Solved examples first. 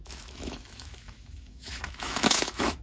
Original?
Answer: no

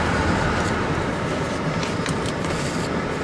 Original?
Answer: yes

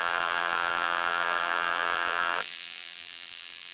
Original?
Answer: no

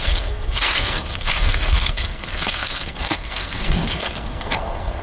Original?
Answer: no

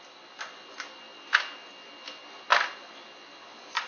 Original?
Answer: yes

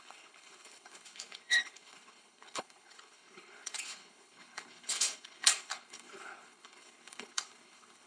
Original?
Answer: no